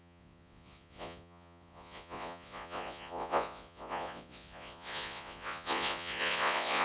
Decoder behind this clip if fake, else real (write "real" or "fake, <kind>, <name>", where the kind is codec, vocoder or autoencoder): fake, vocoder, Vocos